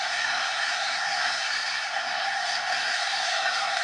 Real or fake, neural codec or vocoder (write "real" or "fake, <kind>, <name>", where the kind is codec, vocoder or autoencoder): fake, codec, SNAC